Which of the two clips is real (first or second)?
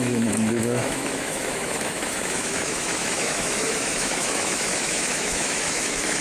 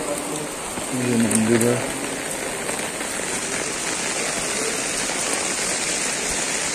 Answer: second